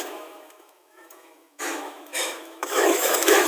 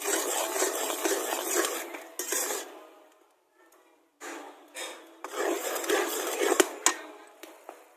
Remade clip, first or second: first